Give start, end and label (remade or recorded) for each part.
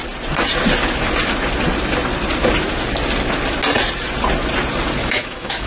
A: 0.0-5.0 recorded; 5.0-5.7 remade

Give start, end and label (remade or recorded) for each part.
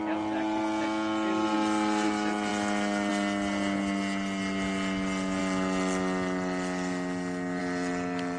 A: 0.0-8.4 recorded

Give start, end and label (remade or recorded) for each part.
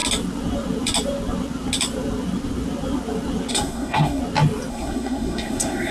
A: 0.0-3.5 recorded; 3.5-4.2 remade; 4.2-4.7 recorded; 4.7-5.9 remade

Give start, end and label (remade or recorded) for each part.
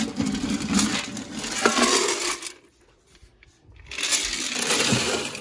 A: 0.0-5.4 recorded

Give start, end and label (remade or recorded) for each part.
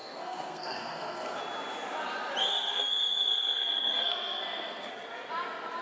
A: 0.0-1.4 remade; 1.4-2.4 recorded; 2.4-4.9 remade; 4.9-5.8 recorded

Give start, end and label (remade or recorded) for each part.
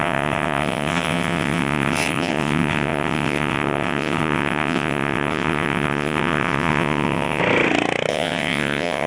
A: 0.0-7.4 remade; 7.4-8.1 recorded; 8.1-9.1 remade